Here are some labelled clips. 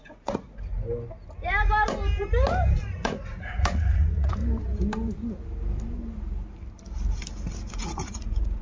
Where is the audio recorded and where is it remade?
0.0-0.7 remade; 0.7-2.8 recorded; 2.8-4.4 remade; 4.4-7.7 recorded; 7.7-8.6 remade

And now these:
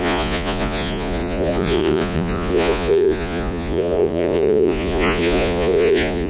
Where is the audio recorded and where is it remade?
0.0-6.3 remade

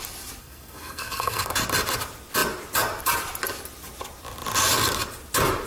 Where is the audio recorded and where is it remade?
0.0-0.4 recorded; 0.4-1.5 remade; 1.5-5.7 recorded

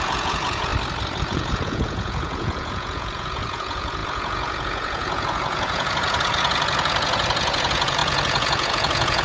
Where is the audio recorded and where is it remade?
0.0-0.7 remade; 0.7-1.2 recorded; 1.2-9.2 remade

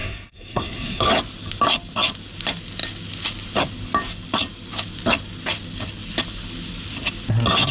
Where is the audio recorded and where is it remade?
0.0-1.0 remade; 1.0-7.7 recorded